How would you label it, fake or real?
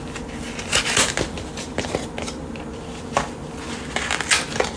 real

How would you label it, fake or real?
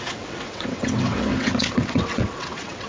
fake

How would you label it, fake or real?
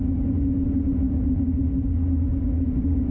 real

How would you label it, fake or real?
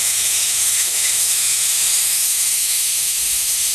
fake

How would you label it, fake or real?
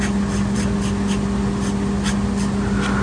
real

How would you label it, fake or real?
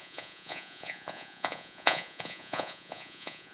fake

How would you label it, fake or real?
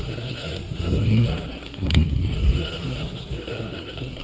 fake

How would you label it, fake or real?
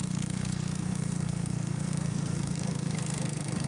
fake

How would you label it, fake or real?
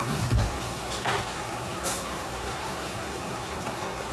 fake